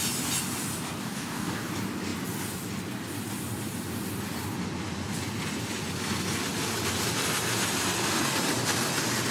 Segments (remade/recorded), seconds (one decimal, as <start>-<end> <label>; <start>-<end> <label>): 0.0-1.0 recorded; 1.0-1.7 remade; 1.7-9.3 recorded